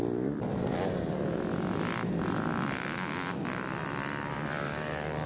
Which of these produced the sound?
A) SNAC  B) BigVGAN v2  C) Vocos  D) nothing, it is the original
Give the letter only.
D